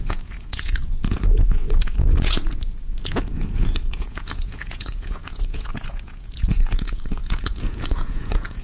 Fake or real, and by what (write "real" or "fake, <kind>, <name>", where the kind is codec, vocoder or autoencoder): fake, vocoder, Vocos